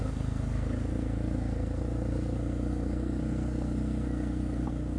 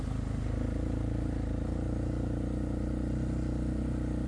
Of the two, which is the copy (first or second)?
first